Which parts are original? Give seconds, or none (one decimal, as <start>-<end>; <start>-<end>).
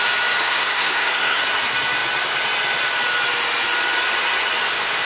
0.0-0.4; 1.4-5.0